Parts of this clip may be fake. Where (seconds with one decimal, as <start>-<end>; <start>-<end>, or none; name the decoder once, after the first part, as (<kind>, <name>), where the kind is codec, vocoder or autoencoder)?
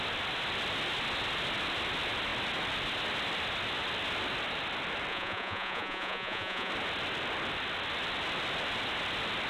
5.1-6.7 (vocoder, Vocos)